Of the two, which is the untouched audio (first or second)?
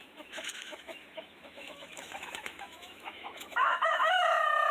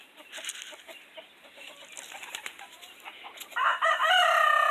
second